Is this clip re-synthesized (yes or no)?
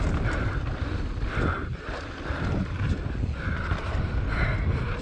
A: no